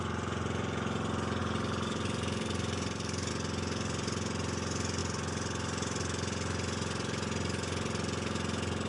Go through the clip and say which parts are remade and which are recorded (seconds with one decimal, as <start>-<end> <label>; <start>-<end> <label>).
0.0-1.4 recorded; 1.4-3.3 remade; 3.3-8.9 recorded

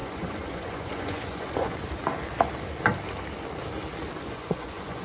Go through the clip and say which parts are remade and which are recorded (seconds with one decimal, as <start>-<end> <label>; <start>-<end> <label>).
0.0-1.7 remade; 1.7-4.2 recorded; 4.2-5.0 remade

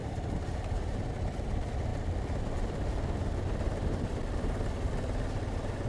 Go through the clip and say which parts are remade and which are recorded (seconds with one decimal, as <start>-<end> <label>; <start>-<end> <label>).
0.0-5.9 recorded

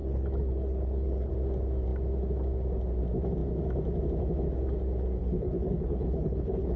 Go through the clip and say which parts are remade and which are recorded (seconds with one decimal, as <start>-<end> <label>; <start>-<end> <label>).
0.0-1.3 remade; 1.3-5.2 recorded; 5.2-6.8 remade

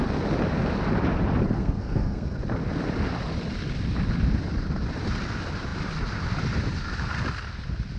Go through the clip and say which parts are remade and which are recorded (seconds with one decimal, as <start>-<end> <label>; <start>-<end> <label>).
0.0-1.6 recorded; 1.6-2.4 remade; 2.4-8.0 recorded

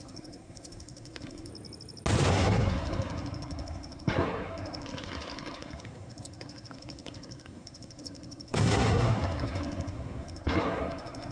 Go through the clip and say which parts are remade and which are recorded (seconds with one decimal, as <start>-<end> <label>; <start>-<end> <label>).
0.0-1.5 remade; 1.5-2.3 recorded; 2.3-11.3 remade